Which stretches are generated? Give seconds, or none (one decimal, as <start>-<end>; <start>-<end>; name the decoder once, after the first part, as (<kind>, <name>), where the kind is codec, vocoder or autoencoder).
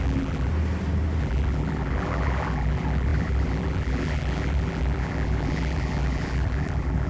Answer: 0.0-0.5 (vocoder, BigVGAN v2); 1.2-7.1